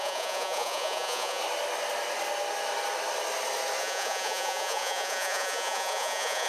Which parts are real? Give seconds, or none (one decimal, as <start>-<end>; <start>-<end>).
1.4-3.8